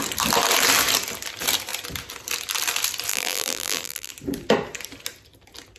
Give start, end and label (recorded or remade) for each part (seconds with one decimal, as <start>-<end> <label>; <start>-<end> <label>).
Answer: 0.0-3.1 recorded; 3.1-4.1 remade; 4.1-5.8 recorded